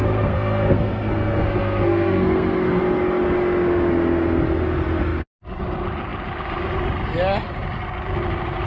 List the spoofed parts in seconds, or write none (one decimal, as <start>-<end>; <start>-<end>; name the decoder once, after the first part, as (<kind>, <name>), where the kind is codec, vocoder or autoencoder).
0.0-2.8 (codec, SNAC)